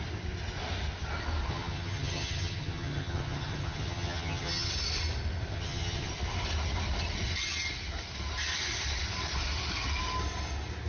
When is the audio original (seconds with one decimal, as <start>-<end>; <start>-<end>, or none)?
0.0-1.5; 4.7-5.5; 6.1-10.9